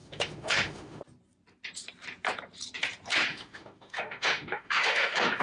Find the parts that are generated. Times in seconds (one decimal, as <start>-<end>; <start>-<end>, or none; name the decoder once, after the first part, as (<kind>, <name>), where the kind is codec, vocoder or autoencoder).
0.0-1.0 (autoencoder, DAC-VAE); 3.3-5.4